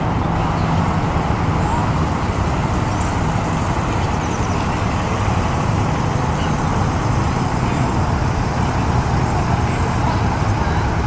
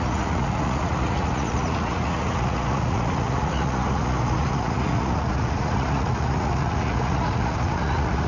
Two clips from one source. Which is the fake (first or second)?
second